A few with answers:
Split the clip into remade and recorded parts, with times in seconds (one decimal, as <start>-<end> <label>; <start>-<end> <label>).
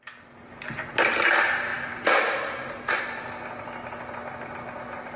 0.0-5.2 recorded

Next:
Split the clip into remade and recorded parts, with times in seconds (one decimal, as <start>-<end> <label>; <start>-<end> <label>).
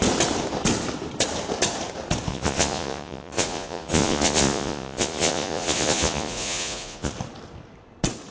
0.0-2.3 recorded; 2.3-7.1 remade; 7.1-8.3 recorded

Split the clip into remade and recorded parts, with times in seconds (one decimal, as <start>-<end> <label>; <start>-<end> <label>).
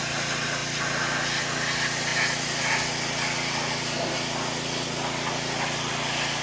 0.0-6.4 recorded